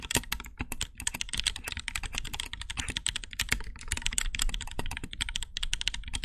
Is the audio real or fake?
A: real